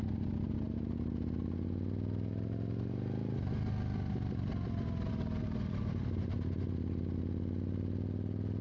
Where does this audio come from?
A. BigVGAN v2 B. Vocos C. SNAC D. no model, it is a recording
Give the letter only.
D